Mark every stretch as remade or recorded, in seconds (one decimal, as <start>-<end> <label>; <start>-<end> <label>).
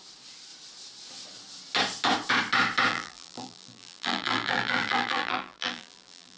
0.0-2.9 recorded; 2.9-6.4 remade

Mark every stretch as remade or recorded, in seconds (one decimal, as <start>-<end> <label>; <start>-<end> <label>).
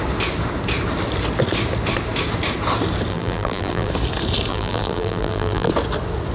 0.0-3.1 recorded; 3.1-3.9 remade; 3.9-4.5 recorded; 4.5-5.7 remade; 5.7-6.3 recorded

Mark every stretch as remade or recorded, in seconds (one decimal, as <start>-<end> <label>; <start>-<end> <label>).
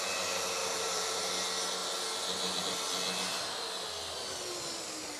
0.0-0.6 recorded; 0.6-1.3 remade; 1.3-5.2 recorded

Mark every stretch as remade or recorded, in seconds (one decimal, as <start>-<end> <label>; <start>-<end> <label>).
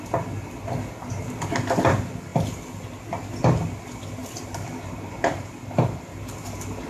0.0-4.2 recorded; 4.2-6.4 remade; 6.4-6.9 recorded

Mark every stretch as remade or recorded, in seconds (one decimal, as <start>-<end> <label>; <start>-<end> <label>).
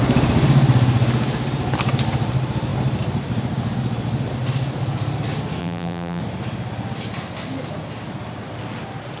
0.0-5.6 recorded; 5.6-6.2 remade; 6.2-9.2 recorded